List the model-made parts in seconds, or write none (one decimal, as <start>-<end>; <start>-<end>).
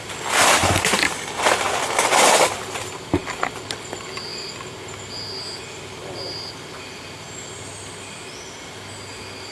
0.6-1.4